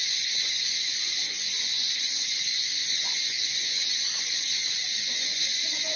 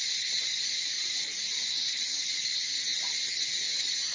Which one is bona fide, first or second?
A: second